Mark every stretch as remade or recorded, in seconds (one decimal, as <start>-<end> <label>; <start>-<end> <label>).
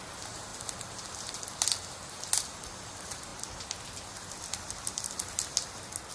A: 0.0-6.1 recorded